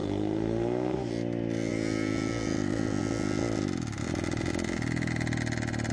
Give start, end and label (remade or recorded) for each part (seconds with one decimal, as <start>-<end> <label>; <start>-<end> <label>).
0.0-1.1 remade; 1.1-5.9 recorded